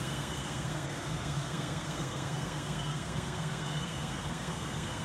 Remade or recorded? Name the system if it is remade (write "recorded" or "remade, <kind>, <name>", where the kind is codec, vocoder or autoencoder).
remade, codec, SNAC